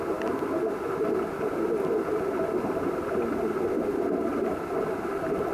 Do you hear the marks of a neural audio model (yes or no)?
no